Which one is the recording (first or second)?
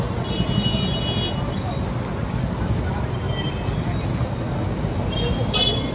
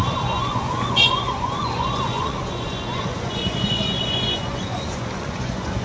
first